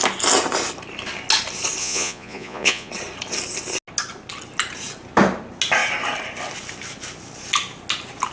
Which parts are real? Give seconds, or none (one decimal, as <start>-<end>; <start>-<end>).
0.0-1.8; 2.9-8.3